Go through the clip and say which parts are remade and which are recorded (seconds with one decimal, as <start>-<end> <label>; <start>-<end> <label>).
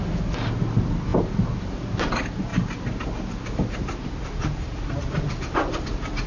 0.0-6.3 recorded